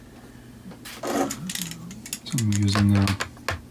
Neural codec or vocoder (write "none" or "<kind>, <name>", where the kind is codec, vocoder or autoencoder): none